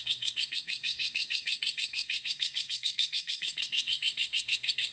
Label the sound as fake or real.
fake